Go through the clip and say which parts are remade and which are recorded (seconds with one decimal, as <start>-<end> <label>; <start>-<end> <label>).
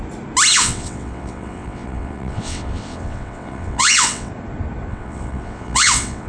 0.0-0.5 recorded; 0.5-4.3 remade; 4.3-4.9 recorded; 4.9-6.3 remade